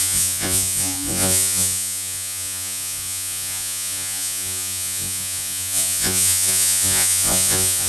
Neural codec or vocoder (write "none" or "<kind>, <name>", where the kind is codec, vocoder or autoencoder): vocoder, Vocos